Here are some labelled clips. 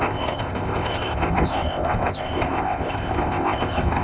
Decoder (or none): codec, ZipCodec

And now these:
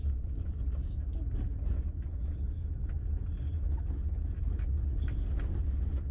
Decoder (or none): none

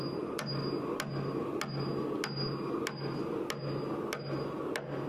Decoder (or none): none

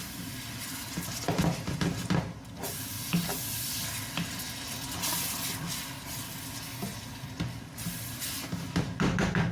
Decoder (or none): none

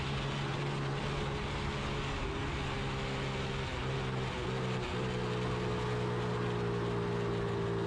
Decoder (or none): none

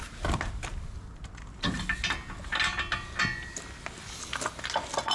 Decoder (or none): none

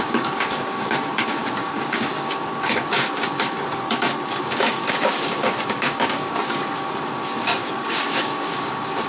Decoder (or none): codec, DAC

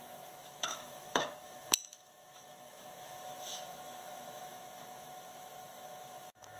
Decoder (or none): autoencoder, DAC-VAE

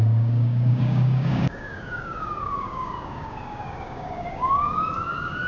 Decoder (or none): codec, DAC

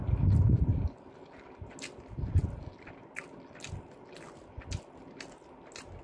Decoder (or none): none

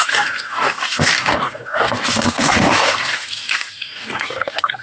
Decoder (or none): codec, DAC